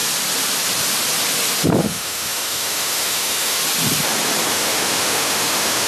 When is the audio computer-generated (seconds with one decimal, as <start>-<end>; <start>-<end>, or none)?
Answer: 1.8-3.6; 4.5-5.9